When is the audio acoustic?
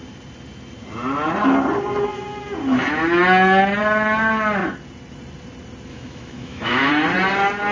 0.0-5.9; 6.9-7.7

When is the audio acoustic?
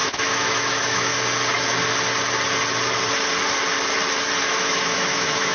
1.1-4.4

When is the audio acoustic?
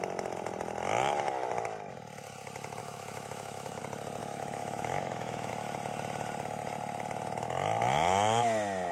0.0-2.8; 3.8-4.2; 5.5-8.9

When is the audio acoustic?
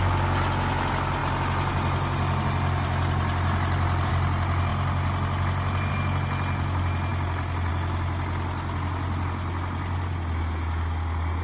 0.0-11.4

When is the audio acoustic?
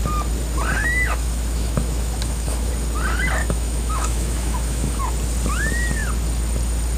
0.0-0.8; 2.7-3.4; 5.0-7.0